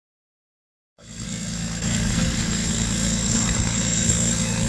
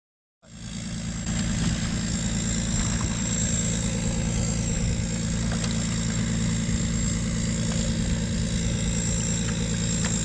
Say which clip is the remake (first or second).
first